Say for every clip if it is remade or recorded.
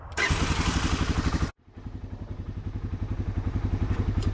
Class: remade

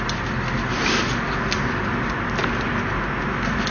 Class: recorded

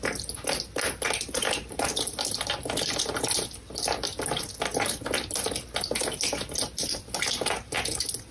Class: recorded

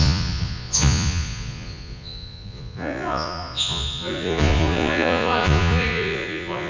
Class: remade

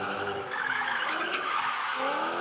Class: remade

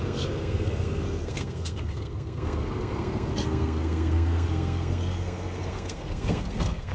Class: remade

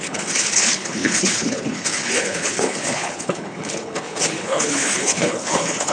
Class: remade